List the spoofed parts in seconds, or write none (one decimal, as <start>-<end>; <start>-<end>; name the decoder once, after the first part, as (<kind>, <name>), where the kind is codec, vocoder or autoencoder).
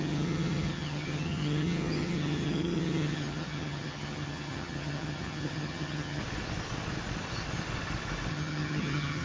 0.0-6.2 (vocoder, HiFi-GAN); 8.3-9.2